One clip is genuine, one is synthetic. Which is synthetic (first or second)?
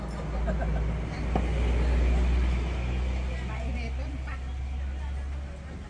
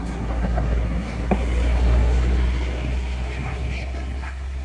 second